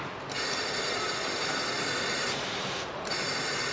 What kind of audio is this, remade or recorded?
recorded